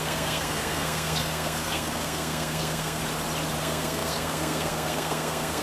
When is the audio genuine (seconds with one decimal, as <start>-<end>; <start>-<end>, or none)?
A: 3.0-3.6